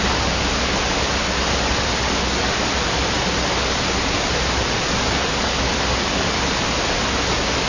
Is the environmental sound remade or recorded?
recorded